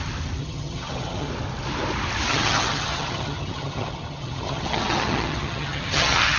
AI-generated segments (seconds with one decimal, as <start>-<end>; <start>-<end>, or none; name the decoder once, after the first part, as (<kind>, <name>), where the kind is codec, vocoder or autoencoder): 0.4-1.3 (vocoder, HiFi-GAN); 2.3-6.4